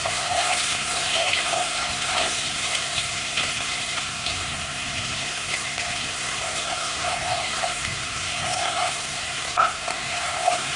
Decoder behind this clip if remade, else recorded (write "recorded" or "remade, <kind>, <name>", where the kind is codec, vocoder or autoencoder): remade, codec, SNAC